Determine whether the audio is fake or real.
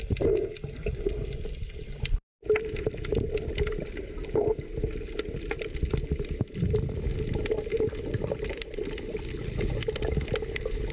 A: real